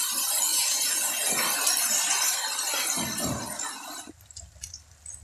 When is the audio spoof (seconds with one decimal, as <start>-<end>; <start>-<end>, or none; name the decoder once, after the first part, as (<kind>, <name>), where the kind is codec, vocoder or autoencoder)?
0.5-1.3 (vocoder, Vocos)